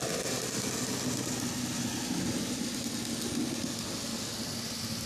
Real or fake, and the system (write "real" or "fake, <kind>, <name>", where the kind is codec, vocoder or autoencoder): real